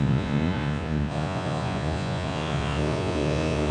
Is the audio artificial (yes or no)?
yes